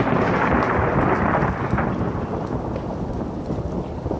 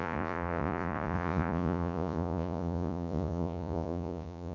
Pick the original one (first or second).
first